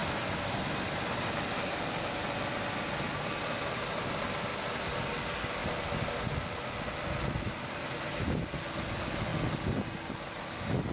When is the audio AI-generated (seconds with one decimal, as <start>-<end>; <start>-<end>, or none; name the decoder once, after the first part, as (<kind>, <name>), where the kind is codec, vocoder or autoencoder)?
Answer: none